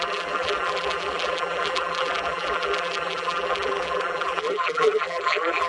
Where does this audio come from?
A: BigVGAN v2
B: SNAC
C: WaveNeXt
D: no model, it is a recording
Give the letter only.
A